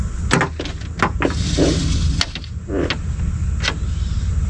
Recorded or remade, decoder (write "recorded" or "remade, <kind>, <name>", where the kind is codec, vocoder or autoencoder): recorded